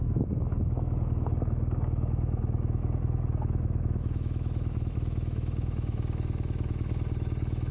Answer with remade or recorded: remade